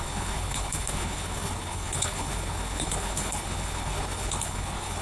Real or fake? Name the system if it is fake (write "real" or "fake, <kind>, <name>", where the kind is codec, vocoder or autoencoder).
fake, codec, HILCodec